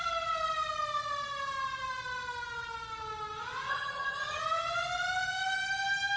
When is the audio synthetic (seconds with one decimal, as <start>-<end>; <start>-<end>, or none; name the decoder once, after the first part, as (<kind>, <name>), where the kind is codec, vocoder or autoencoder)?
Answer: 3.7-4.4 (vocoder, HiFi-GAN)